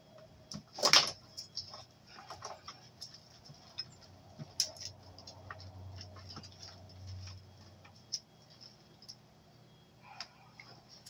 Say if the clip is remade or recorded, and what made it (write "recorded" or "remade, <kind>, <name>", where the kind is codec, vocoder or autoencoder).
recorded